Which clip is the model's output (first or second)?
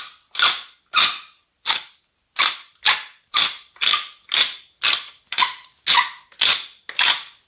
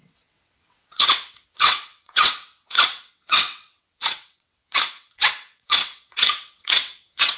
second